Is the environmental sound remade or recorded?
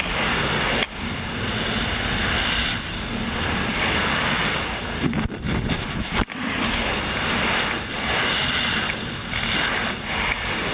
recorded